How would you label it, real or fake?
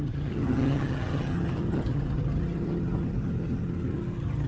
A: fake